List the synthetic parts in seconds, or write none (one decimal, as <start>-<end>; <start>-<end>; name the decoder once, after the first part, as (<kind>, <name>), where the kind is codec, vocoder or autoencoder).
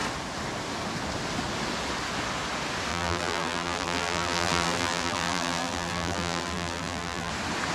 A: 2.9-7.3 (vocoder, BigVGAN v2)